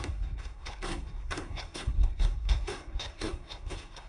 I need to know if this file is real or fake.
fake